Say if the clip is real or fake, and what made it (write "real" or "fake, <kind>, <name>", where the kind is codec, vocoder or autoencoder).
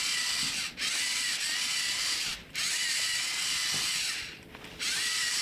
real